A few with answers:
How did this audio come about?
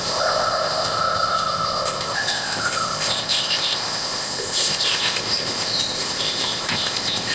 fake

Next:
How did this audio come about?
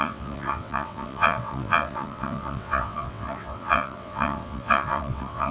fake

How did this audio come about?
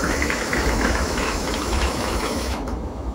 fake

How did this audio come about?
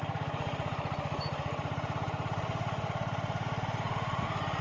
real